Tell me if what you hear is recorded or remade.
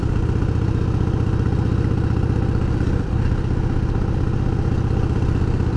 recorded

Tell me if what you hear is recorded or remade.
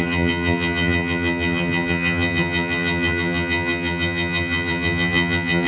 remade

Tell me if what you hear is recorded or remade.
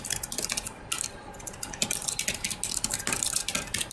recorded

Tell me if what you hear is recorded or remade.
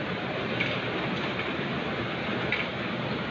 recorded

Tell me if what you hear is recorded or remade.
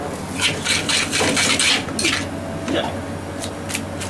recorded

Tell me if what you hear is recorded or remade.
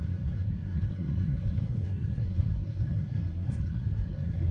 remade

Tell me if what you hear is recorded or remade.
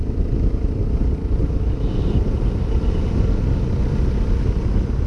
recorded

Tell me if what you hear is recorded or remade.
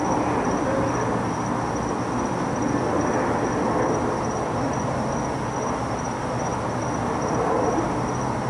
recorded